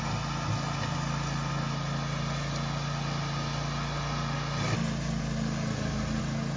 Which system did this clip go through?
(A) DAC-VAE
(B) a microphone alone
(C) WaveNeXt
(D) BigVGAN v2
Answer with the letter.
B